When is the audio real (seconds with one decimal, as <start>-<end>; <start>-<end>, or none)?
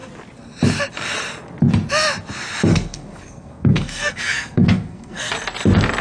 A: 0.0-2.7; 5.3-6.0